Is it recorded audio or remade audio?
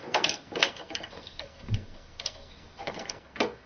remade